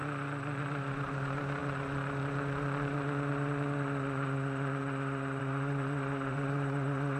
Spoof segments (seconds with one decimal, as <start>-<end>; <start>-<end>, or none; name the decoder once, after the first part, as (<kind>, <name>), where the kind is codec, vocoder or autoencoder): 0.6-1.6 (vocoder, BigVGAN v2); 5.4-7.2